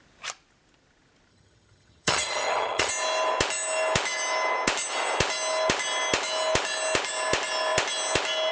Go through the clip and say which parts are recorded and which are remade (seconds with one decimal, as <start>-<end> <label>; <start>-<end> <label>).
0.0-1.3 recorded; 1.3-2.9 remade; 2.9-8.5 recorded